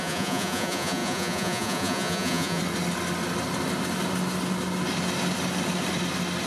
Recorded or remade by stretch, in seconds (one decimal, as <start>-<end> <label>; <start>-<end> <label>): 0.0-2.6 remade; 2.6-6.5 recorded